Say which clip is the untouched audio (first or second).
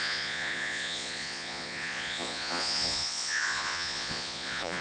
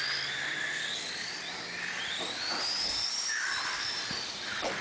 second